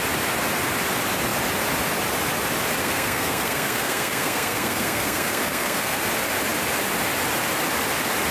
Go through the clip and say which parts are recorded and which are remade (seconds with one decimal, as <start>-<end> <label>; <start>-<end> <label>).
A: 0.0-2.8 recorded; 2.8-6.0 remade; 6.0-8.3 recorded